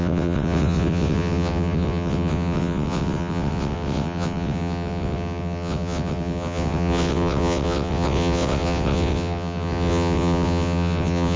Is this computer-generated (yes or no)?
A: yes